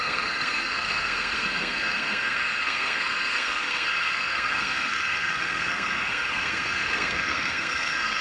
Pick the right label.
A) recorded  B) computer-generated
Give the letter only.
B